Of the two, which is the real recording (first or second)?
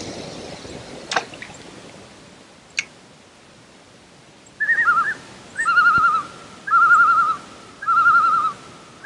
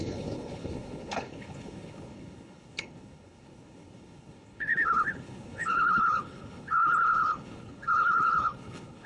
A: first